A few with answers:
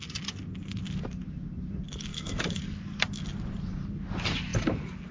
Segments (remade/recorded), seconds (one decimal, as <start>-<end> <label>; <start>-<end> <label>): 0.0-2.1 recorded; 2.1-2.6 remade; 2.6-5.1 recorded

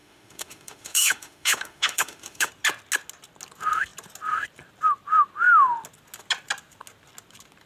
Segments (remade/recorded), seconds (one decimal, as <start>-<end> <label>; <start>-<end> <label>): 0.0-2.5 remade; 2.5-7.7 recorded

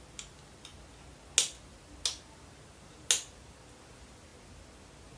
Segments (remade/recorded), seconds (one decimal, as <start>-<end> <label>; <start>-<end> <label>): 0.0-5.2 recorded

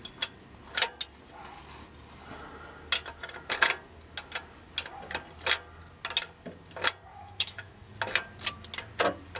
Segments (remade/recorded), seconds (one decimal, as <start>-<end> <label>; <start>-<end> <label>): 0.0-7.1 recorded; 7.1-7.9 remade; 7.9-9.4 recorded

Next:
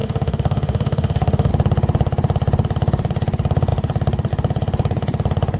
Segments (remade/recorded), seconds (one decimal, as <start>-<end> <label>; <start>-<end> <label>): 0.0-1.5 remade; 1.5-5.6 recorded